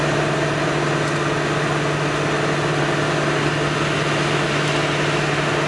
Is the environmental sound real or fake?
real